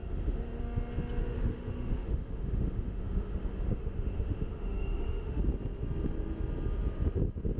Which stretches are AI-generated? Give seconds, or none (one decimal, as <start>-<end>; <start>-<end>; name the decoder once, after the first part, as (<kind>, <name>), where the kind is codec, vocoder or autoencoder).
0.0-0.6 (autoencoder, DAC-VAE); 1.2-5.4